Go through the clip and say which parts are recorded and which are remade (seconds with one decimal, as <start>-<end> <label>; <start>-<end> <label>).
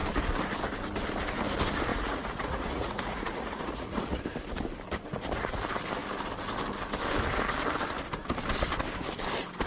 0.0-1.9 recorded; 1.9-4.2 remade; 4.2-9.7 recorded